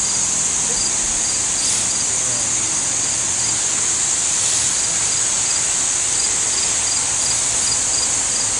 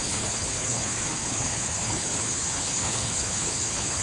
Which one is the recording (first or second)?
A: first